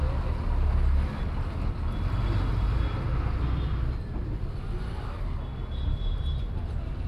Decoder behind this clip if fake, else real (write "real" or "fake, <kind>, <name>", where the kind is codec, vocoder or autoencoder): real